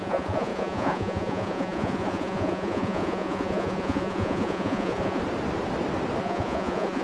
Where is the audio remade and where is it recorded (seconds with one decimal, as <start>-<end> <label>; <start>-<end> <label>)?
0.0-5.2 remade; 5.2-6.2 recorded; 6.2-7.0 remade